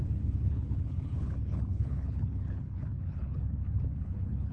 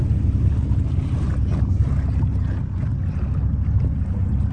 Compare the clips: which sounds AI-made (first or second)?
first